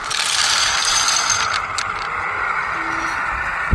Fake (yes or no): no